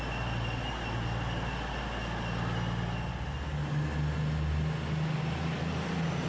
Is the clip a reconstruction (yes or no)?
no